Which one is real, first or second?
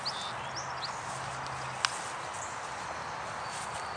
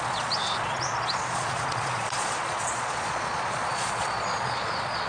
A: first